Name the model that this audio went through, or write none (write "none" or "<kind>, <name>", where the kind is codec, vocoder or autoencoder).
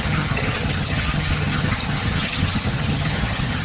vocoder, HiFi-GAN